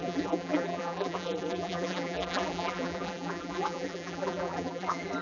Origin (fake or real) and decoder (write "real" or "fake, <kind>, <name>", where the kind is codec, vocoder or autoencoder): fake, vocoder, BigVGAN v2